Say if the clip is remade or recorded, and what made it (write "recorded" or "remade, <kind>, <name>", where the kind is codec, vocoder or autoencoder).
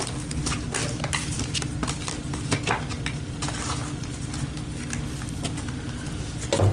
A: recorded